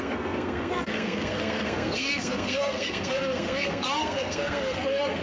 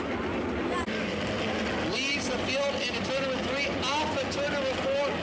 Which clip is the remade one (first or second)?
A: first